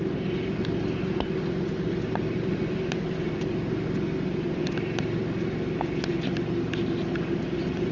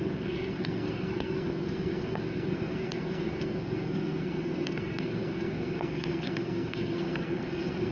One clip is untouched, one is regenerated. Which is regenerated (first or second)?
second